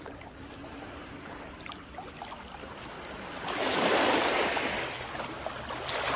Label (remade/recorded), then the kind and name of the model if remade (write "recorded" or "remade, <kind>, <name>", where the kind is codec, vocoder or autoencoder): recorded